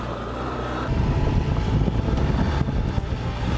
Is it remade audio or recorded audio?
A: recorded